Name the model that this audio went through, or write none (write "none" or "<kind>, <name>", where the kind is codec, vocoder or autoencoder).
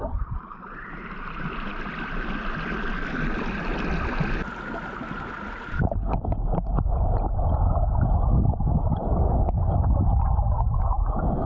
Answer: none